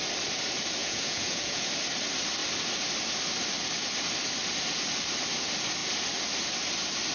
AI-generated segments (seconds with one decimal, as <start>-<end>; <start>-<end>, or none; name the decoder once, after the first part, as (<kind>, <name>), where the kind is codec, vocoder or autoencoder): 0.8-1.7 (vocoder, Vocos)